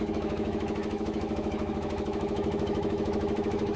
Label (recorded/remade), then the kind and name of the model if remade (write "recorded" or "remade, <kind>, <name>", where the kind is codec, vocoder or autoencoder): remade, autoencoder, DAC-VAE